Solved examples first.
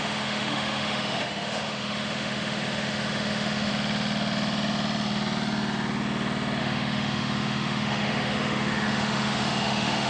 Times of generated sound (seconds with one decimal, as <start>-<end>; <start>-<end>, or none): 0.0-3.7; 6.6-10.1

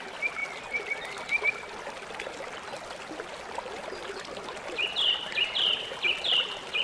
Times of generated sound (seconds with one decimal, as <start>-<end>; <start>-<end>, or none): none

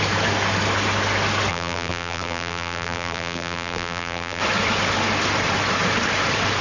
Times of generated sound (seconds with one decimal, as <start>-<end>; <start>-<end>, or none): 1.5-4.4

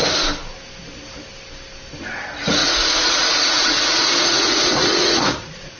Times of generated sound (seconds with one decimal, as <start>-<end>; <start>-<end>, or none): 2.6-5.8

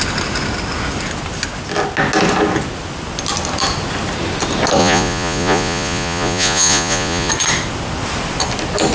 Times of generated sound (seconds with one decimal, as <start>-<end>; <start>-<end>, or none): 4.8-7.3

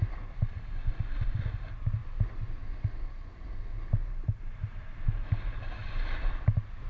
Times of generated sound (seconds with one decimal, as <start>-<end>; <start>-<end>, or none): none

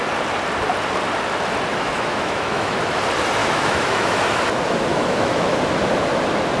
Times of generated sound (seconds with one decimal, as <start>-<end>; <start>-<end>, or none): 1.7-3.0; 3.4-4.4; 4.9-5.6